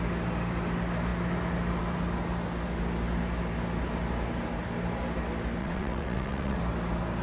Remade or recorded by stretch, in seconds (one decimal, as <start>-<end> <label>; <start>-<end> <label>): 0.0-5.6 recorded; 5.6-6.6 remade; 6.6-7.2 recorded